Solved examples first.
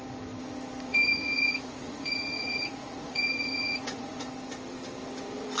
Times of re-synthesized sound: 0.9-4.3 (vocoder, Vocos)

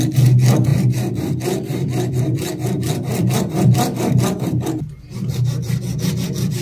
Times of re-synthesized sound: 0.7-4.7 (vocoder, BigVGAN v2)

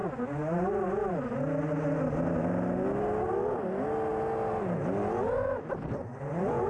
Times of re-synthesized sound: none

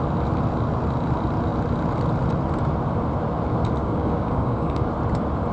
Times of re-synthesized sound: 3.8-4.8 (codec, DAC)